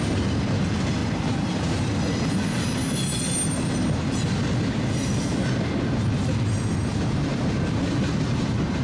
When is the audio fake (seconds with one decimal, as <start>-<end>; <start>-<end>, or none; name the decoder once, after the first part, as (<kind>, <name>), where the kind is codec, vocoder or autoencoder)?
1.0-2.3 (vocoder, BigVGAN v2); 7.3-8.8